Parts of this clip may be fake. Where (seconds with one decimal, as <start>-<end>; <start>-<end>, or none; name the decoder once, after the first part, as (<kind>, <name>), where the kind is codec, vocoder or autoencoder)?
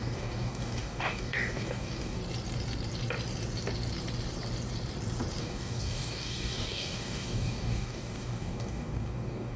0.0-2.2 (codec, DAC); 5.4-9.6